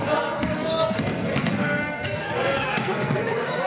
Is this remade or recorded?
remade